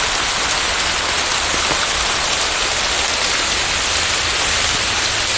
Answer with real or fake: real